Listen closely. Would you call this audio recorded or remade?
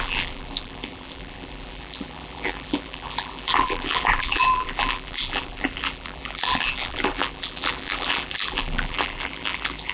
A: remade